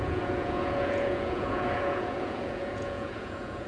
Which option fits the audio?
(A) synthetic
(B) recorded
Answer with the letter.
A